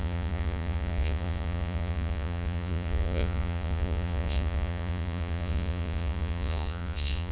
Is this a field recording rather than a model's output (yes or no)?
no